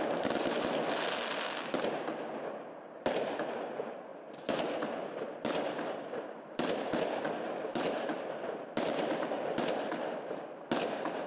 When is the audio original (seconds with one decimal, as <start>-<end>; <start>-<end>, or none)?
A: 0.0-4.1; 7.0-7.7; 10.3-11.3